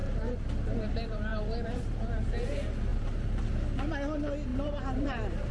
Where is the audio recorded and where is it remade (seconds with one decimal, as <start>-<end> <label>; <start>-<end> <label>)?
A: 0.0-0.9 remade; 0.9-1.3 recorded; 1.3-2.3 remade; 2.3-2.9 recorded; 2.9-3.5 remade; 3.5-4.5 recorded; 4.5-5.5 remade